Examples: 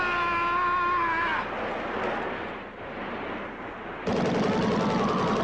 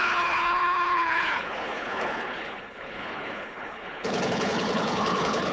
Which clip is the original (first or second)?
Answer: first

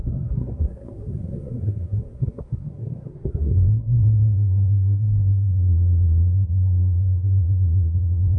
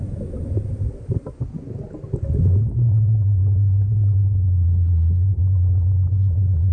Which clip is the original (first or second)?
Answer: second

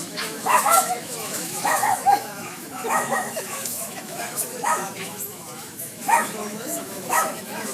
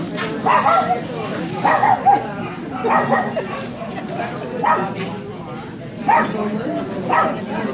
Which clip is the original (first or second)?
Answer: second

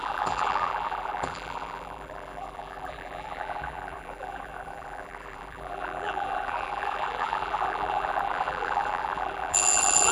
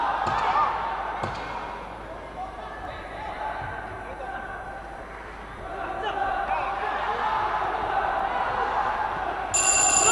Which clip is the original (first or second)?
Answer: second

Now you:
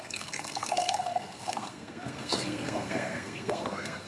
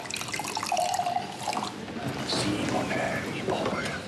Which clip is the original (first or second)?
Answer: second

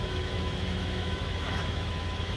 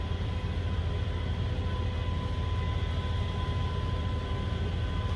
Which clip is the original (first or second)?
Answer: second